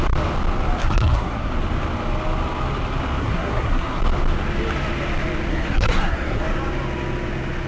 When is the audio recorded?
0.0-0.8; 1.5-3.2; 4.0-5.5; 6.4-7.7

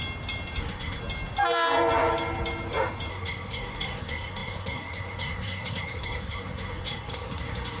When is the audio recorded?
0.0-0.6; 1.0-3.1